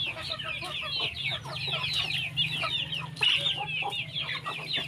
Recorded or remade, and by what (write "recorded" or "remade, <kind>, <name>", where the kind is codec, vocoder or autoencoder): recorded